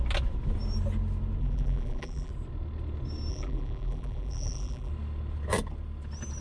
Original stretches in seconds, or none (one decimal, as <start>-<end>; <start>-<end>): 0.0-1.4; 2.3-3.3; 4.9-6.4